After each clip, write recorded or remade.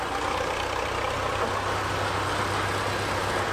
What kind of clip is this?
recorded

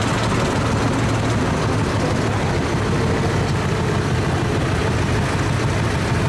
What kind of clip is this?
recorded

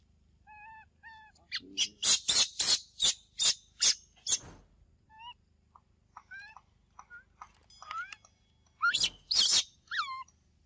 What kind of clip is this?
recorded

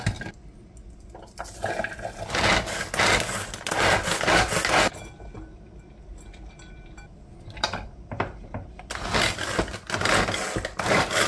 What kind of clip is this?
recorded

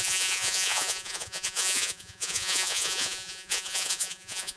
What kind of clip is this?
remade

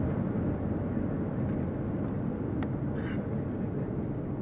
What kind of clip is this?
recorded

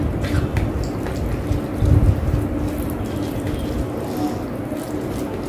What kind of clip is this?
recorded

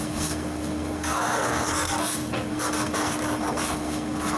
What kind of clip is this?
remade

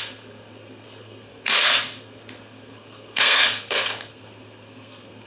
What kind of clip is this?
remade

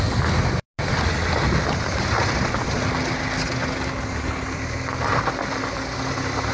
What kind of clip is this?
recorded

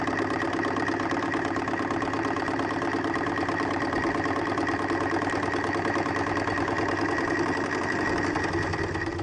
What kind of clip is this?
recorded